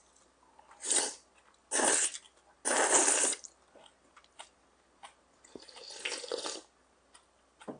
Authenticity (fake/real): real